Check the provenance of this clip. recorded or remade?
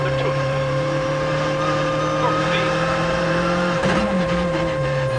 remade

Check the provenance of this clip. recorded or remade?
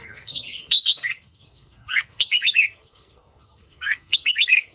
remade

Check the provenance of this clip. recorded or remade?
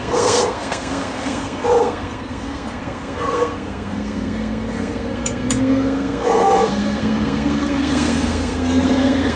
remade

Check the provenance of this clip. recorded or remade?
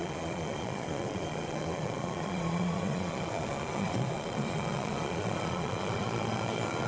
remade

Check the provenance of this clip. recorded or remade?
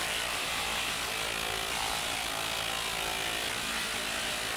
recorded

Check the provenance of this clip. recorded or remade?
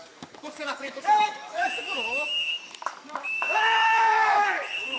remade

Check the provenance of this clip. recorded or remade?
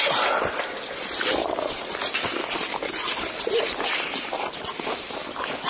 recorded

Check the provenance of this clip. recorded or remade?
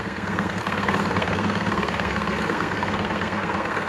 remade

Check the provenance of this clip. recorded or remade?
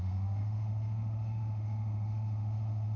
remade